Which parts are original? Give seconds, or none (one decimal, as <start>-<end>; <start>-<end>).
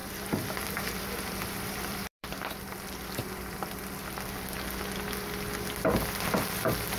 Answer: 2.5-3.2; 3.8-7.0